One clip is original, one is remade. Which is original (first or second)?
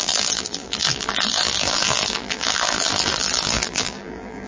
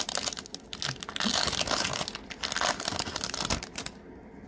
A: second